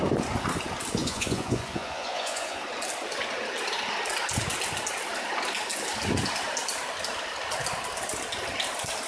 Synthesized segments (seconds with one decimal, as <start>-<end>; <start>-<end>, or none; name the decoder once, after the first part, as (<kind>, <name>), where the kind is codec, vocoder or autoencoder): 1.0-2.6 (vocoder, Vocos)